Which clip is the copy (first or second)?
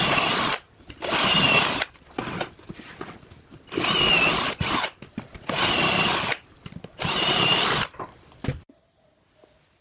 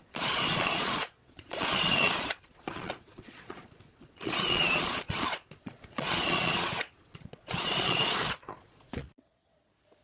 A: second